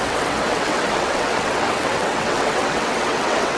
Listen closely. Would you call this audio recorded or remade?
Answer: remade